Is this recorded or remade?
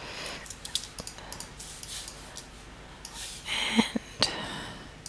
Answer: recorded